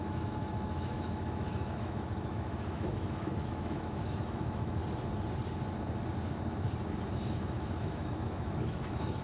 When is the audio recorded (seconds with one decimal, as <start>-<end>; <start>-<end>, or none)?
4.8-7.4